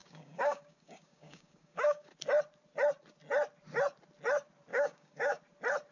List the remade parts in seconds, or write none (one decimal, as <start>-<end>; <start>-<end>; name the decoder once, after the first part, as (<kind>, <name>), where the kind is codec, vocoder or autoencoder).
0.0-2.1 (codec, DAC); 4.7-5.4